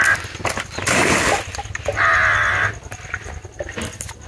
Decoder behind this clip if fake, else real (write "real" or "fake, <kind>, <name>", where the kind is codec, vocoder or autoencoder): real